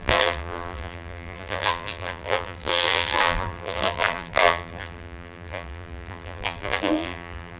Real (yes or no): no